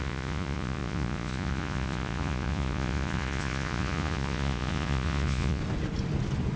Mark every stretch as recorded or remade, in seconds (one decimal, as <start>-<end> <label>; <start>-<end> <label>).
0.0-5.6 remade; 5.6-6.6 recorded